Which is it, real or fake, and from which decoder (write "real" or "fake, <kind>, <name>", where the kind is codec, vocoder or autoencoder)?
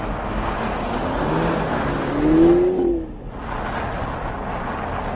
real